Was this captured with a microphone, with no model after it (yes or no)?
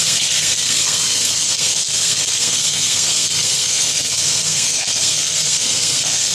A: no